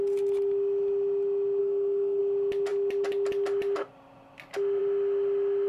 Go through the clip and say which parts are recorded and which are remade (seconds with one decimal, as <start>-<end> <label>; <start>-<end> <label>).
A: 0.0-1.6 recorded; 1.6-2.2 remade; 2.2-5.7 recorded